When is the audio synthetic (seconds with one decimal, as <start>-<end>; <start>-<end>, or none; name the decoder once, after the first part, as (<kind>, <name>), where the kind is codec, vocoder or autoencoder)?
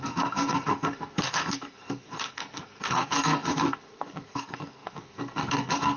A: 0.0-6.0 (codec, SNAC)